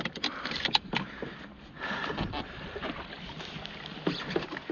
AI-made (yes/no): no